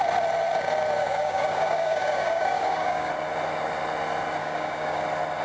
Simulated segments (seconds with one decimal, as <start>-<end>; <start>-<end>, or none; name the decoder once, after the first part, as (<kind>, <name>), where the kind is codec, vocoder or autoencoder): 1.0-3.1 (codec, DAC); 4.4-5.0